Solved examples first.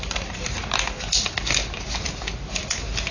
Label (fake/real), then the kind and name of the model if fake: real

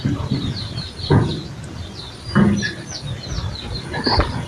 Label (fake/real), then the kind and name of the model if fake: real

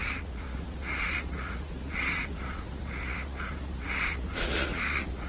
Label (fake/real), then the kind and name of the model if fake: fake, vocoder, Vocos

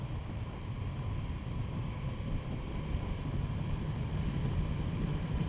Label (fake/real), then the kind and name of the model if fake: real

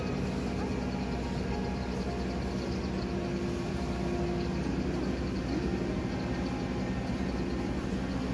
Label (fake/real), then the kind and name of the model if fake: real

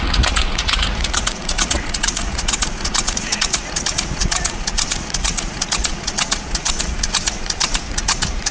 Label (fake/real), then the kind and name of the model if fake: fake, vocoder, Vocos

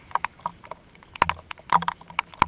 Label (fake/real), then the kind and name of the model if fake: real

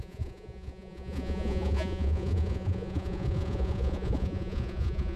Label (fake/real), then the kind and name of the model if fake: fake, vocoder, Vocos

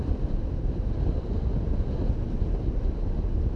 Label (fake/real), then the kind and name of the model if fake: real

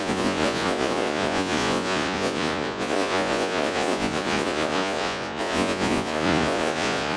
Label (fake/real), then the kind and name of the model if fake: fake, vocoder, Vocos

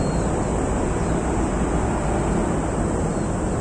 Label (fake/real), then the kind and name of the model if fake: real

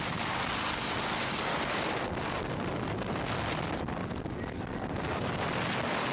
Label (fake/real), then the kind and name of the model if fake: real